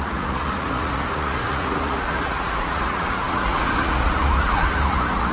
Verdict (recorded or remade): remade